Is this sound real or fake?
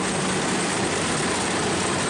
real